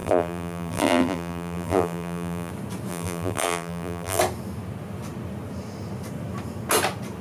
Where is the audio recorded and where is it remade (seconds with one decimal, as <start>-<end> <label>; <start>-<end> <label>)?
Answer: 0.0-2.5 remade; 2.5-2.9 recorded; 2.9-4.2 remade; 4.2-7.2 recorded